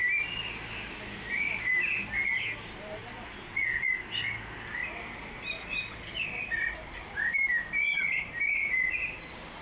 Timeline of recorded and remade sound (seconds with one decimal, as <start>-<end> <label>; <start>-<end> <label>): 0.0-3.0 recorded; 3.0-4.0 remade; 4.0-4.8 recorded; 4.8-8.2 remade; 8.2-9.6 recorded